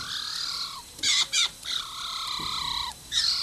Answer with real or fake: fake